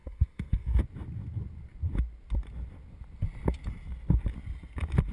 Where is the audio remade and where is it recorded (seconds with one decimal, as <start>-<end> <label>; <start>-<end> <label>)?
0.0-0.8 remade; 0.8-5.1 recorded